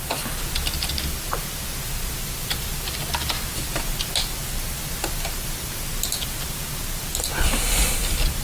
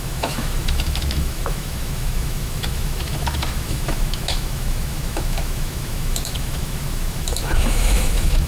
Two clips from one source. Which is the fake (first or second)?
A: second